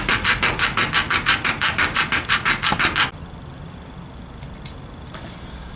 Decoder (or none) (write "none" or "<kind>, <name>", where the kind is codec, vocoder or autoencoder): none